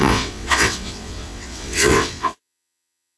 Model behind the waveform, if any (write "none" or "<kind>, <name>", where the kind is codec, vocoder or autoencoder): vocoder, WaveNeXt